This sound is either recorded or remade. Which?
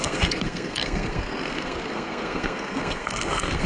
remade